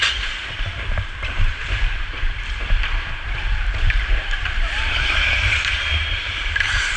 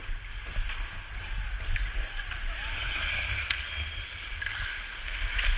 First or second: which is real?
second